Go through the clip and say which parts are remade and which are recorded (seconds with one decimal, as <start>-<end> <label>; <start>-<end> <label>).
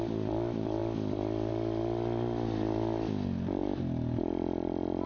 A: 0.0-5.1 recorded